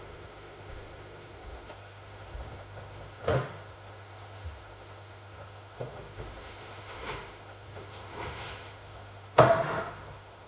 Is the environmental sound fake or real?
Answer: fake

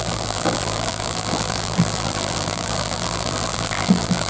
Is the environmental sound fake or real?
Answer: fake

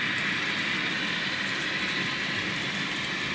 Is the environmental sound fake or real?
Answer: real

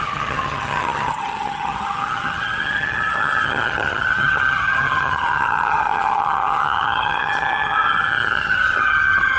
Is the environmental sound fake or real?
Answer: fake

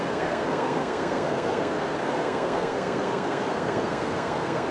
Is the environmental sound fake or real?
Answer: fake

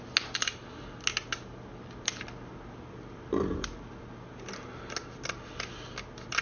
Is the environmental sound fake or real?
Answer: real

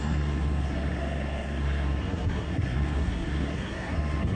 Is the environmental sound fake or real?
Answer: fake